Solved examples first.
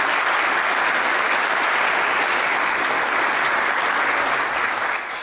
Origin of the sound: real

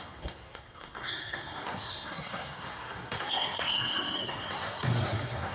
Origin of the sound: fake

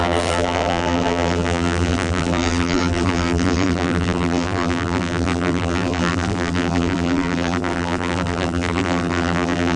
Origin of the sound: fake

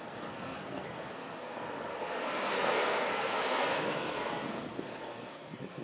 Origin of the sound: fake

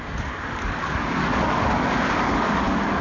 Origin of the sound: fake